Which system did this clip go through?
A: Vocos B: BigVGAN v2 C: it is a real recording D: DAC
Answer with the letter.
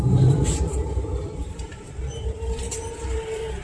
B